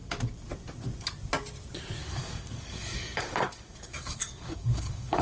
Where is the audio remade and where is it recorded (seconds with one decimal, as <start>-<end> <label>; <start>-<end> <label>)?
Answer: 0.0-2.0 recorded; 2.0-5.2 remade

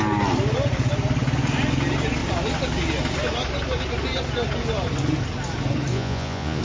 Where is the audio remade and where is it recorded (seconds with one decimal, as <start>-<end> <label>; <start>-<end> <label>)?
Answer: 0.0-5.9 recorded; 5.9-6.6 remade